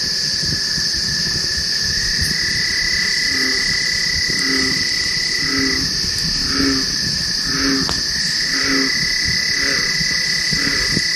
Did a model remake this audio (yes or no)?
no